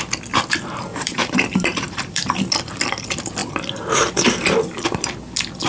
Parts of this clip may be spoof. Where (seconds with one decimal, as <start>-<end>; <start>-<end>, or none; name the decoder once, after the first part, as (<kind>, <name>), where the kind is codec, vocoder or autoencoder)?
0.9-2.4 (vocoder, BigVGAN v2)